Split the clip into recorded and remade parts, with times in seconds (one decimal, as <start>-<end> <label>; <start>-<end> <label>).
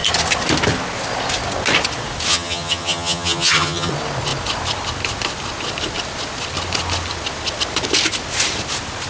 0.0-2.3 recorded; 2.3-3.9 remade; 3.9-9.1 recorded